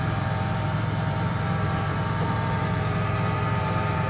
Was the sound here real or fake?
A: fake